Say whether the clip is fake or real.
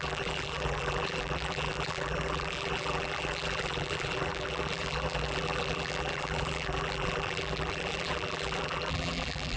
fake